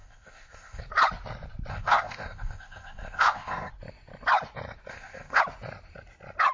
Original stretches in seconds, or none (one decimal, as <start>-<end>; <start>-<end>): 0.8-1.7; 3.7-4.9; 5.4-6.5